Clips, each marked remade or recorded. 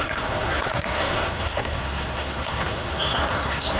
remade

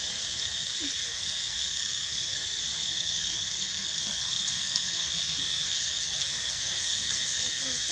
remade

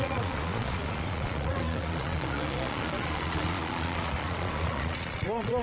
remade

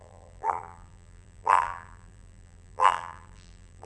remade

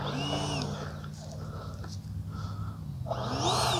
recorded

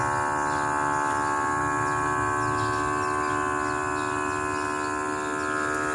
recorded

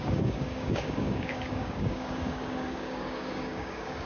remade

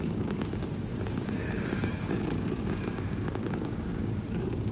remade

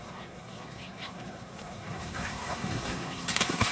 remade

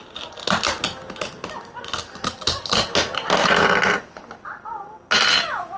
recorded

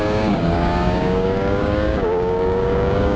remade